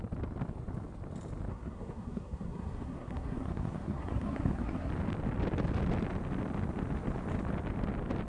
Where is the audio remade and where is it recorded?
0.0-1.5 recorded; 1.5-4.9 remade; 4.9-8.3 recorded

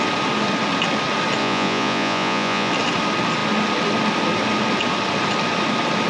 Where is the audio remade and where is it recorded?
0.0-1.4 recorded; 1.4-2.7 remade; 2.7-6.1 recorded